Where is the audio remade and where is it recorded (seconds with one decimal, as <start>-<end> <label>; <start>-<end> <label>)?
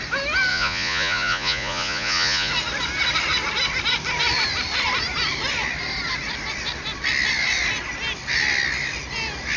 0.0-0.5 recorded; 0.5-2.5 remade; 2.5-9.6 recorded